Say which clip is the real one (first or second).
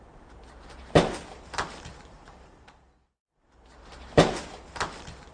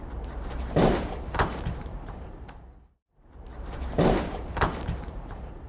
first